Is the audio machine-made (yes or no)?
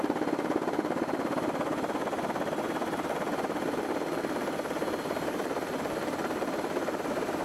no